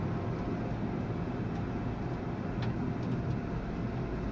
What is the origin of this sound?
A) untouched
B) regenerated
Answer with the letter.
A